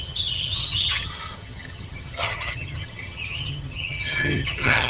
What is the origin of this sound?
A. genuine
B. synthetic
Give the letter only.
B